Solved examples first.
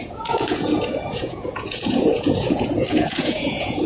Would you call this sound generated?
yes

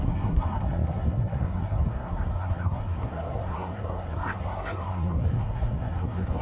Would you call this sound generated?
yes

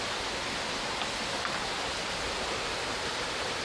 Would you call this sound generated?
no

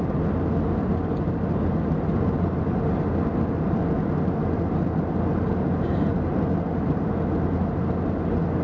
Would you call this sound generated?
no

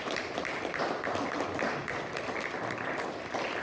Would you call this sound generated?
no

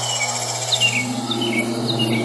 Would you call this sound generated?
no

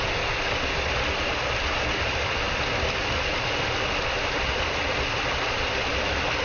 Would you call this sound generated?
no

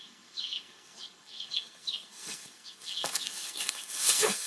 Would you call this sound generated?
yes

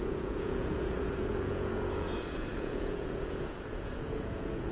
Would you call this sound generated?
yes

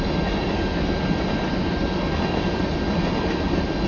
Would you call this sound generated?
no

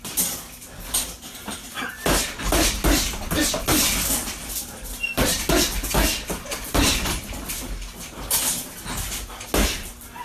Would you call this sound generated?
no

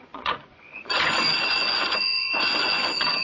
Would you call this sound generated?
yes